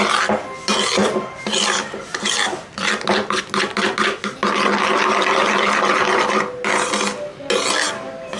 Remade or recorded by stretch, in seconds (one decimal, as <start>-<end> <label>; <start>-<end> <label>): 0.0-8.4 recorded